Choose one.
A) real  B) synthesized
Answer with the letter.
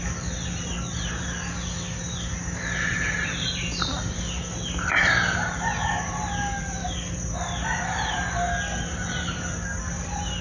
A